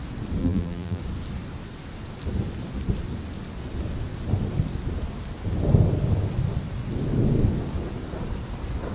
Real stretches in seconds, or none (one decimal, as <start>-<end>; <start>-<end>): 0.0-0.4; 1.0-8.9